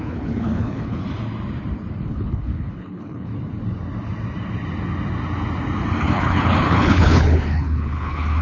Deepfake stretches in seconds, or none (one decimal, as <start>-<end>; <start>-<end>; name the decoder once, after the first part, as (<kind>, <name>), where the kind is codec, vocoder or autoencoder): 0.0-1.0 (codec, HILCodec); 2.0-3.3; 6.0-8.4